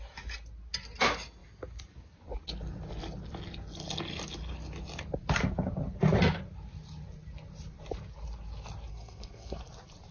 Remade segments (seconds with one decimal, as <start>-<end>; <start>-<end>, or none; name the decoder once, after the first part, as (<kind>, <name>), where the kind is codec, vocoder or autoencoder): 8.9-9.6 (codec, SNAC)